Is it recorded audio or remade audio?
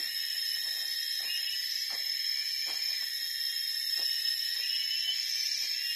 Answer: recorded